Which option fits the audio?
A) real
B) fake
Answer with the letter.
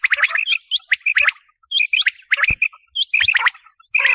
A